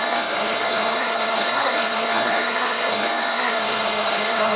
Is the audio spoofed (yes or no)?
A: yes